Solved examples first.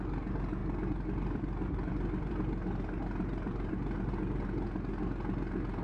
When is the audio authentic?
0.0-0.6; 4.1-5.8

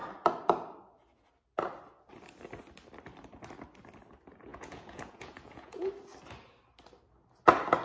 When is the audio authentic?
0.0-4.5; 5.9-7.8